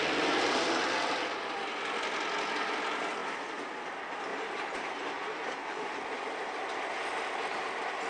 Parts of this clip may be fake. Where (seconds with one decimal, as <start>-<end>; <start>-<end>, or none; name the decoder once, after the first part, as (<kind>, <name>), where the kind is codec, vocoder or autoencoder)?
4.3-6.0 (vocoder, BigVGAN v2)